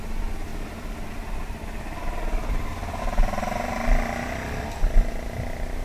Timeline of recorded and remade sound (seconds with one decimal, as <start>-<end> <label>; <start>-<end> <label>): 0.0-0.5 recorded; 0.5-3.0 remade; 3.0-5.8 recorded